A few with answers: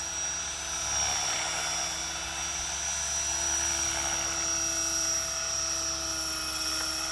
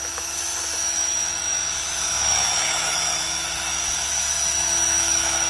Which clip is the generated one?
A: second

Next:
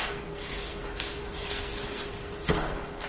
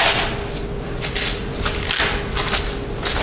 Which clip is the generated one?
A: first